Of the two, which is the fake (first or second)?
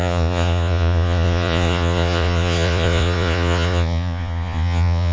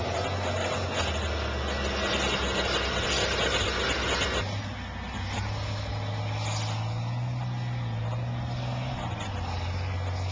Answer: first